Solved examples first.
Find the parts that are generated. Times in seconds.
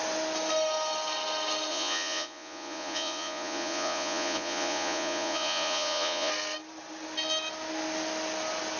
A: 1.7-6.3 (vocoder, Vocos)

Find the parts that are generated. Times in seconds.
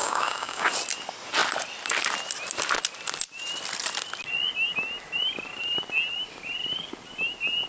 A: 0.0-0.7 (codec, DAC)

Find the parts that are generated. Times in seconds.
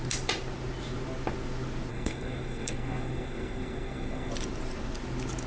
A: 1.9-4.3 (codec, SNAC)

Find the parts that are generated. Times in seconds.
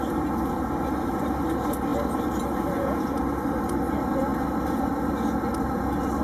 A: none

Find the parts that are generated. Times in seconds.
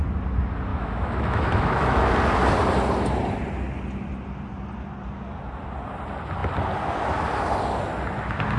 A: 0.7-2.1 (autoencoder, DAC-VAE)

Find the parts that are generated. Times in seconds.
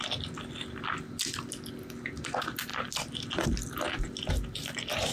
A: none